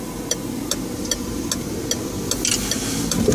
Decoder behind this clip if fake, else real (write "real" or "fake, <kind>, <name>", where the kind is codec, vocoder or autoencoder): real